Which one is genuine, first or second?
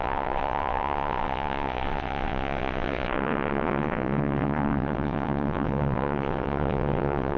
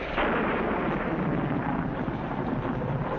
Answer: second